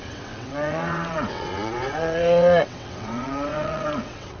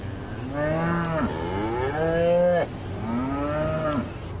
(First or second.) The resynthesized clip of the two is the first